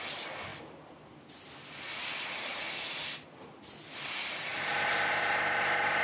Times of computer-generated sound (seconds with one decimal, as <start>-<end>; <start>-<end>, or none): 0.5-4.1; 4.5-6.0